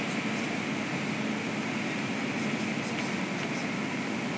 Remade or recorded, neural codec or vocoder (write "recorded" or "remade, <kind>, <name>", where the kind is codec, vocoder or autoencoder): recorded